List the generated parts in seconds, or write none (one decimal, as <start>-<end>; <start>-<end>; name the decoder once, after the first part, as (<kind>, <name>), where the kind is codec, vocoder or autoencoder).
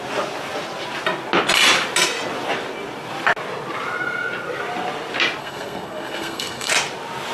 5.4-6.7 (codec, SNAC)